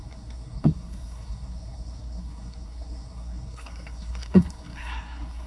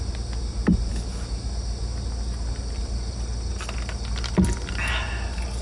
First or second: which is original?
second